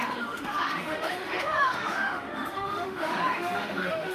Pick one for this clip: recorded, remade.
remade